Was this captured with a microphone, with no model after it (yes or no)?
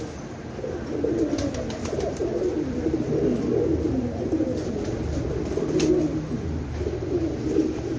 yes